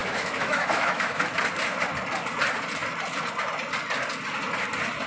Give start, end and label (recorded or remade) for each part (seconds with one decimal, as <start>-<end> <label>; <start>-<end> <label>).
0.0-1.2 remade; 1.2-5.1 recorded